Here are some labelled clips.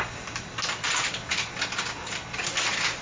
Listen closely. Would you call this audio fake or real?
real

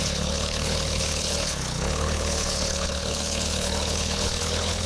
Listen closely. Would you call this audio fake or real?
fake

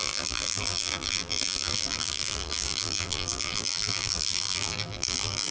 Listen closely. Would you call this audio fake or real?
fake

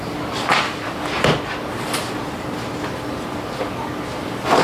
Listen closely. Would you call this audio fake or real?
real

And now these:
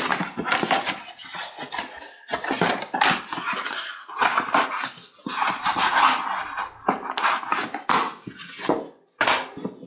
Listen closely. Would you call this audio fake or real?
real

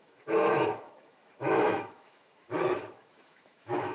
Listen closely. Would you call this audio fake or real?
fake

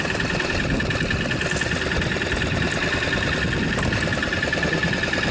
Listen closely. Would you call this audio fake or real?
real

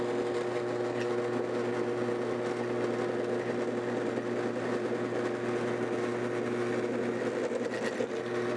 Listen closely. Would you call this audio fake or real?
real